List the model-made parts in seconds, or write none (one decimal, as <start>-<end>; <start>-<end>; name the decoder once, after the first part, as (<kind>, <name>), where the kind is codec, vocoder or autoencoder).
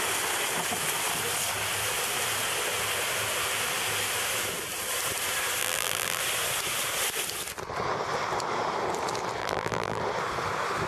5.6-6.2 (vocoder, BigVGAN v2); 9.4-10.0